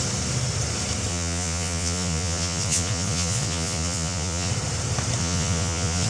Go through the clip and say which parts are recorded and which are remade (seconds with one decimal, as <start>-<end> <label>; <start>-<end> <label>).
0.0-1.1 recorded; 1.1-4.5 remade; 4.5-5.2 recorded; 5.2-6.1 remade